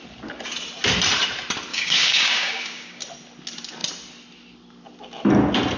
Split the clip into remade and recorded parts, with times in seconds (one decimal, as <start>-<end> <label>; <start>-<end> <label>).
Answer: 0.0-1.7 recorded; 1.7-3.0 remade; 3.0-5.8 recorded